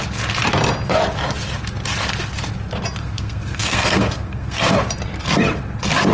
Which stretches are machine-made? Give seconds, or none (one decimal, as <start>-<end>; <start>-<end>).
3.0-4.7